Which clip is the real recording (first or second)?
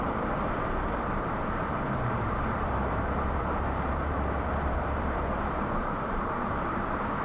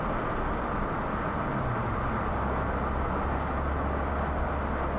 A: second